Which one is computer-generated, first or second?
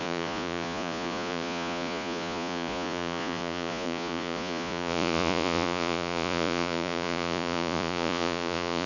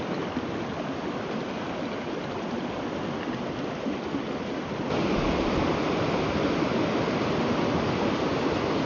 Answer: first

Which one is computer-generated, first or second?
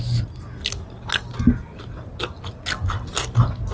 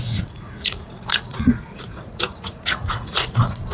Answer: second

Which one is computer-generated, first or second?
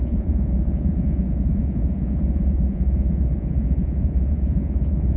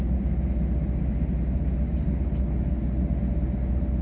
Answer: first